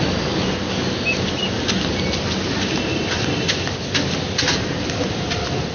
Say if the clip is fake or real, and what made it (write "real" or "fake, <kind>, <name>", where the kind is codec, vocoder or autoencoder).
real